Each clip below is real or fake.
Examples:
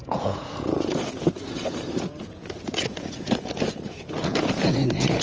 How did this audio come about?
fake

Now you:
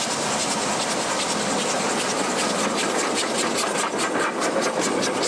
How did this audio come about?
real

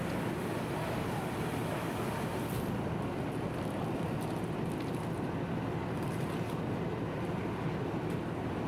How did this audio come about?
real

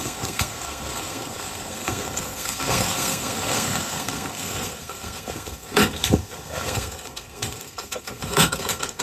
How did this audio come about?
fake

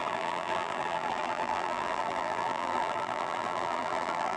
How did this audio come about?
fake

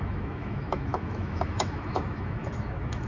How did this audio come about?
fake